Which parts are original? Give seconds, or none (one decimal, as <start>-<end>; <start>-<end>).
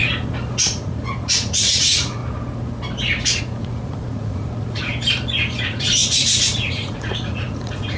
0.0-0.6; 2.2-3.4; 4.9-5.6